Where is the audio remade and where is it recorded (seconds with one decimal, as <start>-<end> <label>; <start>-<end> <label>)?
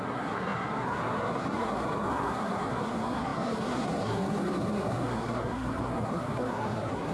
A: 0.0-7.1 remade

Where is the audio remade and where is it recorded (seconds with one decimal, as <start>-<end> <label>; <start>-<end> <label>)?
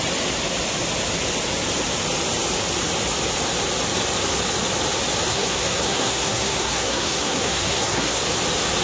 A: 0.0-5.3 recorded; 5.3-8.2 remade; 8.2-8.8 recorded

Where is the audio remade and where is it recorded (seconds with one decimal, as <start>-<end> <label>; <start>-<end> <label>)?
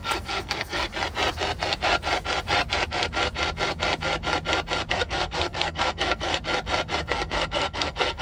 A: 0.0-0.8 remade; 0.8-4.9 recorded; 4.9-6.3 remade; 6.3-7.0 recorded; 7.0-8.2 remade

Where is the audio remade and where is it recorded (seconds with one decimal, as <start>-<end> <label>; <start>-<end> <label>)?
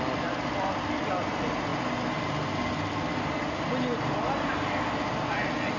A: 0.0-5.8 recorded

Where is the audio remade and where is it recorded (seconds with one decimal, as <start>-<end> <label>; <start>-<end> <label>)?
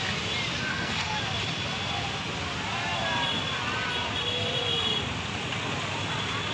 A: 0.0-0.7 recorded; 0.7-1.2 remade; 1.2-6.5 recorded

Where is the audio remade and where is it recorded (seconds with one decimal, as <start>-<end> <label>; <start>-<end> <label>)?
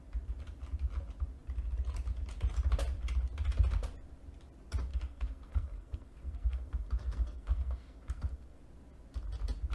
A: 0.0-4.9 recorded; 4.9-8.6 remade; 8.6-9.7 recorded